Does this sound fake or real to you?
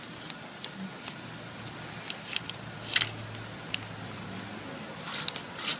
real